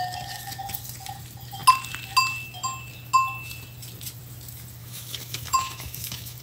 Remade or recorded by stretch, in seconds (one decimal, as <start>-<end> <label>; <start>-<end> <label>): 0.0-4.8 recorded; 4.8-6.4 remade